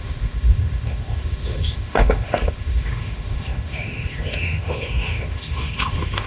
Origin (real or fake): fake